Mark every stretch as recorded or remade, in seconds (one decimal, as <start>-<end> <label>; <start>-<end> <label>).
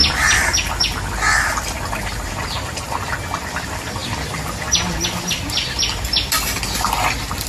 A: 0.0-2.3 remade; 2.3-7.5 recorded